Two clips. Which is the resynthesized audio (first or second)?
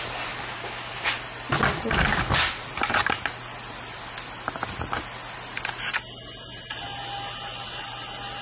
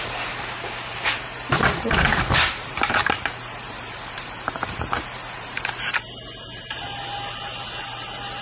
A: second